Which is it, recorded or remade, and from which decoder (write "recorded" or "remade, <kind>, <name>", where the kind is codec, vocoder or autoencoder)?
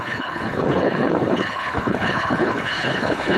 remade, codec, HILCodec